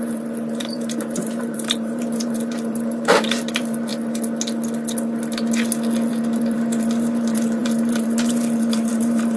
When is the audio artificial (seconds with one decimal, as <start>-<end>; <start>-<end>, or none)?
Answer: 0.0-3.9; 6.1-9.4